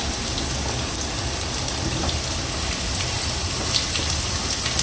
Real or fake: real